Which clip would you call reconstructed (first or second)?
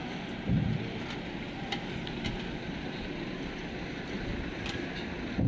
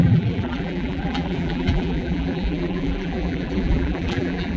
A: second